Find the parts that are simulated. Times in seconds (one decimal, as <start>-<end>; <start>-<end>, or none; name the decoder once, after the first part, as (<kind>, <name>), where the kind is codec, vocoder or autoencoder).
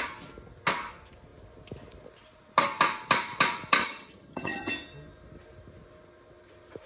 3.8-4.7 (vocoder, HiFi-GAN)